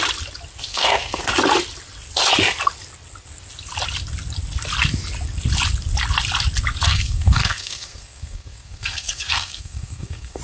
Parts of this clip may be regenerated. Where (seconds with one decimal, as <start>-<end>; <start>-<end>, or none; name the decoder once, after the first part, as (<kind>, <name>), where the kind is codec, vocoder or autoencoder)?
0.7-1.2 (codec, SNAC); 6.9-10.4